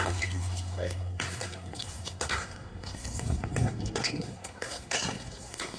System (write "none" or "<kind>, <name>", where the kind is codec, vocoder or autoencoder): codec, SNAC